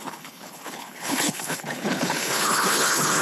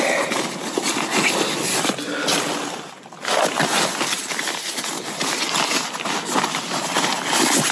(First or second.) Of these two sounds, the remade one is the first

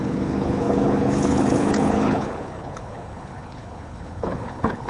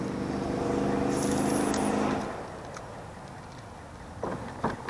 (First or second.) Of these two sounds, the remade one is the first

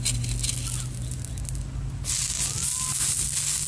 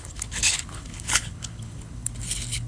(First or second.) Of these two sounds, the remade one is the second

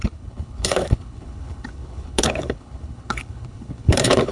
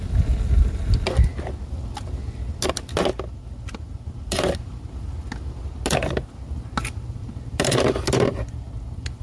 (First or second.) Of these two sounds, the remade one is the first